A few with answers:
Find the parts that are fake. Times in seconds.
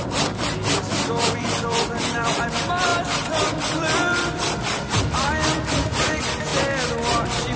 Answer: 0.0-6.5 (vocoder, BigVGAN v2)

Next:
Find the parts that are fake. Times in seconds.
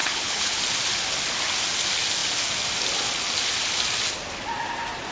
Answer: 0.0-0.6 (codec, HILCodec)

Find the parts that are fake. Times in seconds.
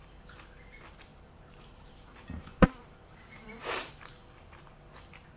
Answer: 1.1-1.9 (vocoder, BigVGAN v2); 2.5-3.9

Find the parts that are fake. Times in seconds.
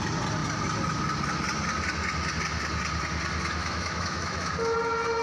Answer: 3.6-4.5 (autoencoder, DAC-VAE)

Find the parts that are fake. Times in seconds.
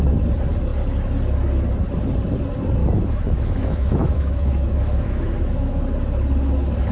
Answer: 2.8-5.8 (autoencoder, DAC-VAE)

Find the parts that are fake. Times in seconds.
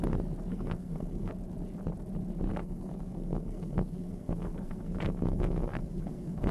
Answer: 0.5-1.3 (codec, SNAC); 2.5-6.5